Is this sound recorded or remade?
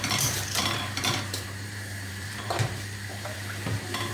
remade